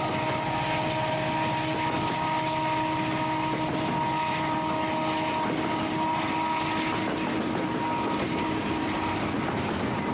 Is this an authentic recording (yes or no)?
yes